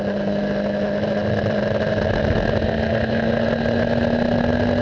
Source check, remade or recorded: recorded